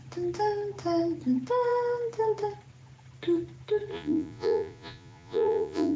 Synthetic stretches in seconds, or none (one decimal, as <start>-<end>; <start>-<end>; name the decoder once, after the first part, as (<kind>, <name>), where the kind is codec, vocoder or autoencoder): 3.9-6.0 (vocoder, Vocos)